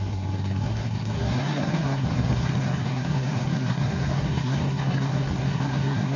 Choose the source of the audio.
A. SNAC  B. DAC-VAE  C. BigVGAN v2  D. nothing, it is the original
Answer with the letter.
A